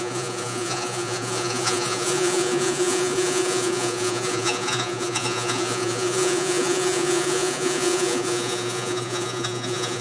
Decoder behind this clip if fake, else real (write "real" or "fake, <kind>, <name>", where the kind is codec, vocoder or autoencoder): fake, vocoder, Vocos